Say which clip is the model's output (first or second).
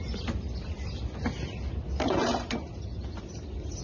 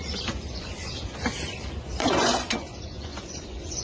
second